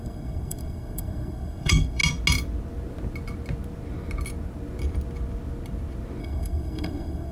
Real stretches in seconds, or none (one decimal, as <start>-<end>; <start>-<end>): 2.0-6.2